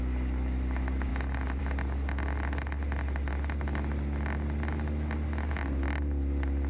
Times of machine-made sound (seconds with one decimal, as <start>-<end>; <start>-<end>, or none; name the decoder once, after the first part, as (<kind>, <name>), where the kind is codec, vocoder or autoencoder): none